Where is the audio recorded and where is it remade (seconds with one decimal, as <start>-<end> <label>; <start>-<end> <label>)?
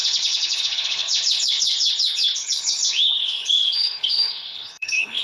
0.0-5.2 remade